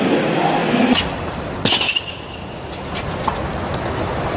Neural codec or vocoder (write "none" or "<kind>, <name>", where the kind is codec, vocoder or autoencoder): none